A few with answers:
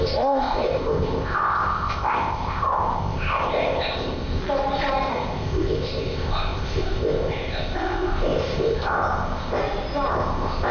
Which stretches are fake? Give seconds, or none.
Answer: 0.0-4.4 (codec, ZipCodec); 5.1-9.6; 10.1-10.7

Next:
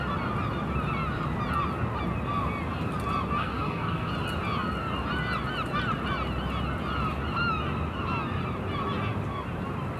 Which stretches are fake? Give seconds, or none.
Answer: 3.4-4.1 (codec, SNAC)

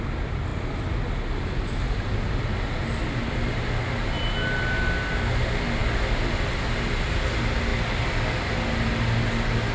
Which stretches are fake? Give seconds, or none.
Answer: none

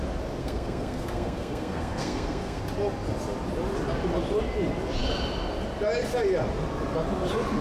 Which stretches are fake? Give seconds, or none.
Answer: 0.4-2.6 (codec, SNAC)

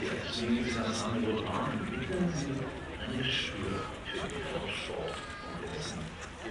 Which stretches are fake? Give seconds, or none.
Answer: 0.0-5.7 (vocoder, BigVGAN v2)

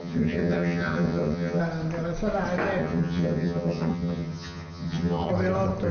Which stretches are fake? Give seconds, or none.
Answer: 0.0-1.6 (vocoder, HiFi-GAN); 2.8-5.3

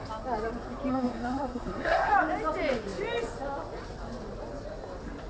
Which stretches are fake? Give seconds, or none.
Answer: 0.9-2.1 (codec, SNAC)